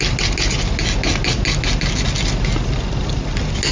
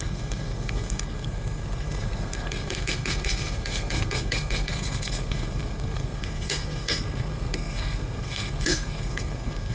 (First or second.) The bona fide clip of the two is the first